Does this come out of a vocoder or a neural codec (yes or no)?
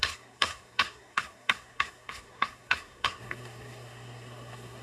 yes